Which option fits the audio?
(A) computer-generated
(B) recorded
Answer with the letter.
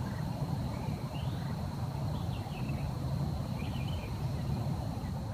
A